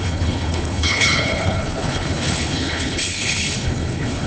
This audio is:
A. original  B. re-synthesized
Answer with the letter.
B